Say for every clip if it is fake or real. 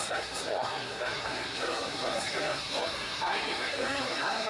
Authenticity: fake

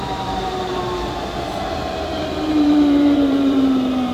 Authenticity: fake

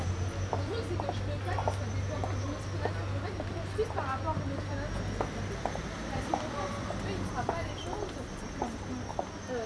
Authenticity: real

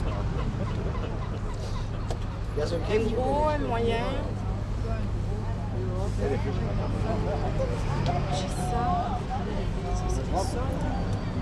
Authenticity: real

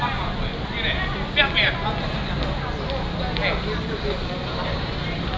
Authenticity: real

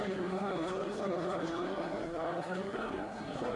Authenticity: fake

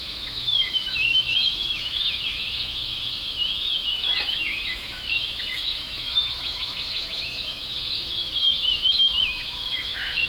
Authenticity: fake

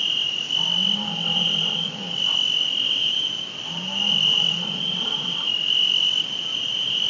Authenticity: fake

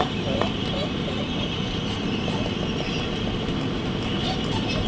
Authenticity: real